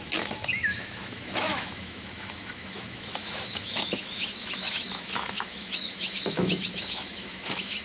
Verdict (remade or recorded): remade